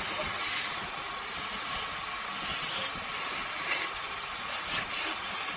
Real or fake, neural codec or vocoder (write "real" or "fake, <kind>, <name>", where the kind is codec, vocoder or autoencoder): real